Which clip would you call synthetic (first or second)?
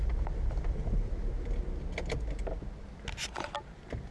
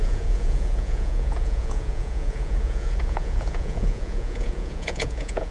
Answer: second